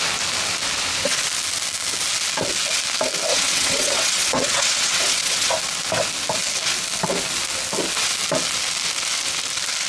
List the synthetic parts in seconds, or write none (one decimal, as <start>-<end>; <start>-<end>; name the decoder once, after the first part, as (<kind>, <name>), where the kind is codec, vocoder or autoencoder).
3.3-5.5 (vocoder, WaveNeXt)